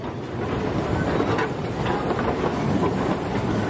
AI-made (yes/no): no